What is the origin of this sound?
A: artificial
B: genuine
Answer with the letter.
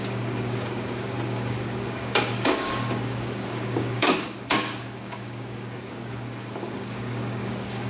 A